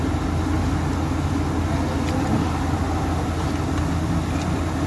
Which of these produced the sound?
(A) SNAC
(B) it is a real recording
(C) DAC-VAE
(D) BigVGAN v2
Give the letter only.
B